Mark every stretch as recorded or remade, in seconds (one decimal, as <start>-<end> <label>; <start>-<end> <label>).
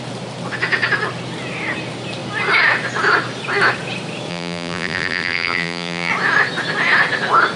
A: 0.0-4.3 recorded; 4.3-6.1 remade; 6.1-7.6 recorded